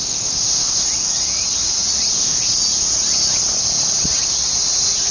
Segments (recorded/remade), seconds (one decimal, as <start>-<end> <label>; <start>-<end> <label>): 0.0-0.8 remade; 0.8-2.1 recorded; 2.1-2.6 remade; 2.6-5.1 recorded